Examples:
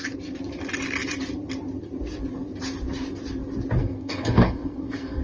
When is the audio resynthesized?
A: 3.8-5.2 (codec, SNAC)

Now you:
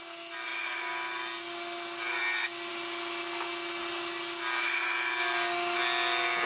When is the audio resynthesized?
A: none

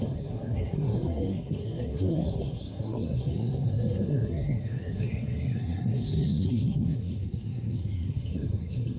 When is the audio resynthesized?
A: 0.0-9.0 (codec, SNAC)

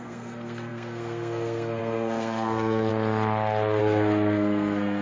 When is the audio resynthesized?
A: 0.0-2.9 (codec, SNAC); 3.8-5.0